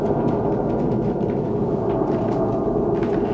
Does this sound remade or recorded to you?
recorded